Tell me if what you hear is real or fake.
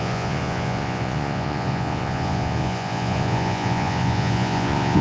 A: fake